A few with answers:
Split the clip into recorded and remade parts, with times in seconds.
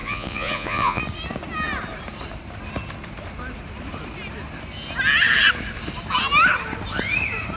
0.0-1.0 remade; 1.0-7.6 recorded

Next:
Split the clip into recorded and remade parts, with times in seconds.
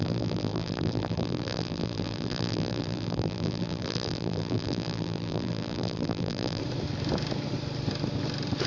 0.0-6.6 remade; 6.6-8.7 recorded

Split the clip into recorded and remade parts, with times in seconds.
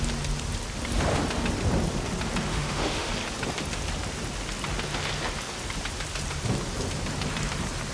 0.0-2.5 recorded; 2.5-3.1 remade; 3.1-7.9 recorded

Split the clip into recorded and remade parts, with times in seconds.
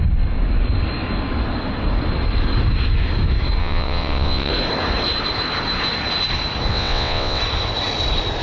0.0-3.6 recorded; 3.6-4.5 remade; 4.5-6.7 recorded; 6.7-7.4 remade; 7.4-8.4 recorded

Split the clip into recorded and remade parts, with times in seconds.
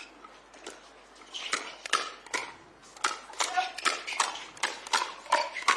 0.0-5.8 recorded